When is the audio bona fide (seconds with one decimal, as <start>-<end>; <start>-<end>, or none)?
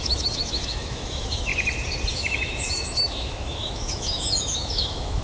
1.5-2.1